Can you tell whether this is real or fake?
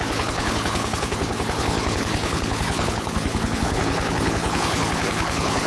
fake